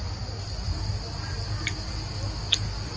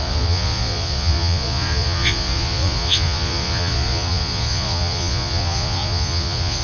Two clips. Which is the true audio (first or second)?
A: first